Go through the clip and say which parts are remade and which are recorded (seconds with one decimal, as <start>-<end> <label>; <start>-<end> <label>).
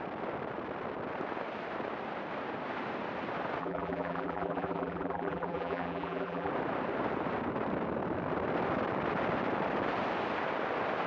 0.0-3.6 recorded; 3.6-6.5 remade; 6.5-11.1 recorded